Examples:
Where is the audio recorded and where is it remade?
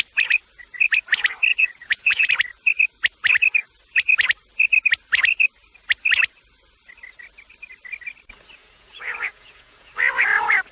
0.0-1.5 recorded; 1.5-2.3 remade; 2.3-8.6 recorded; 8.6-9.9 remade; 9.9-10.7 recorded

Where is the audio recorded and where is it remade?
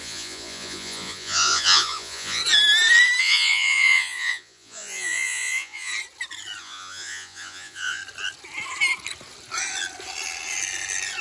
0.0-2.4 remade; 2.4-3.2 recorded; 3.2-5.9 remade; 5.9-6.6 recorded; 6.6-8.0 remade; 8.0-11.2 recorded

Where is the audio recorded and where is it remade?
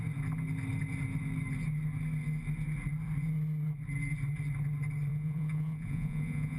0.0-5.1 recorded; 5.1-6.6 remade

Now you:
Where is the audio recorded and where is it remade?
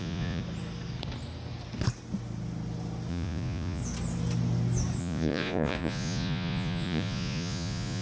0.0-0.4 remade; 0.4-3.1 recorded; 3.1-3.8 remade; 3.8-5.0 recorded; 5.0-8.0 remade